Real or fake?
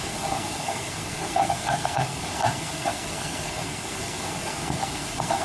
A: fake